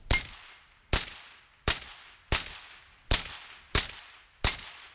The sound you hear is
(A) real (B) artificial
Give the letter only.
A